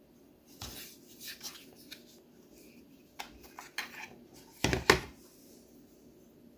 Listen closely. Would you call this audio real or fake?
real